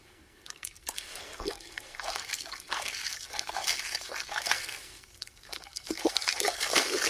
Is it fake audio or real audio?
fake